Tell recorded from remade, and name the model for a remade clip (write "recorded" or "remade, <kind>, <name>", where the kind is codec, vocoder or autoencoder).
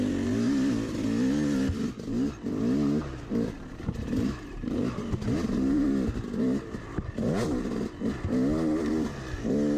recorded